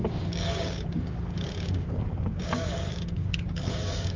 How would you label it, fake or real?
fake